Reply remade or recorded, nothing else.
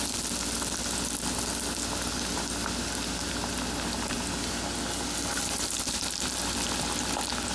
recorded